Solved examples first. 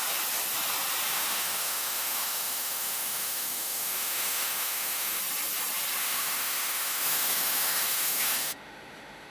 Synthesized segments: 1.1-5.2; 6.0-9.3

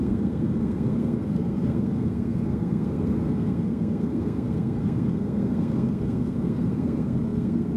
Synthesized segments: 0.0-7.8

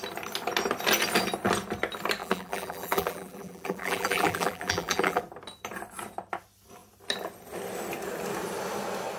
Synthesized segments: 2.2-5.2

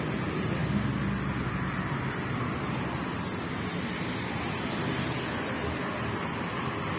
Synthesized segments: none

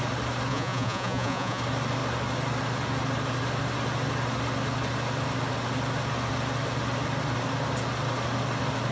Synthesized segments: 0.5-1.6

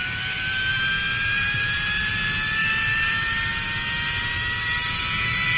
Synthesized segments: none

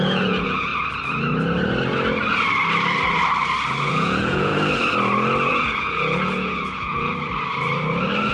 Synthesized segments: 0.0-0.7; 3.9-4.5; 5.5-7.1

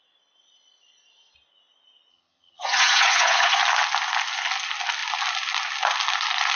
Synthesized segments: 2.1-3.6